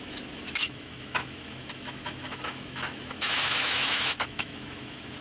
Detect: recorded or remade remade